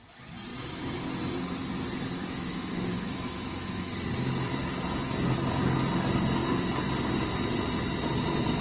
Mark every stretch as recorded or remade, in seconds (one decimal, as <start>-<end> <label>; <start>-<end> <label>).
0.0-2.2 recorded; 2.2-3.9 remade; 3.9-8.6 recorded